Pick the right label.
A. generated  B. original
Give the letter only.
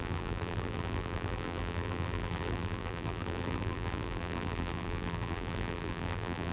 A